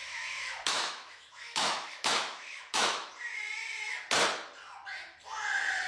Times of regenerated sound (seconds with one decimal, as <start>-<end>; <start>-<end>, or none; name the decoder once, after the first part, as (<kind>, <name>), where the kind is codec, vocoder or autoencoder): 0.0-3.1 (autoencoder, DAC-VAE)